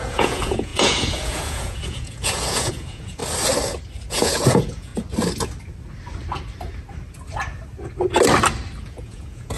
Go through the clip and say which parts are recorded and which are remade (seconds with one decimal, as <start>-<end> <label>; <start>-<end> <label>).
0.0-3.2 remade; 3.2-4.1 recorded; 4.1-4.9 remade; 4.9-8.8 recorded; 8.8-9.6 remade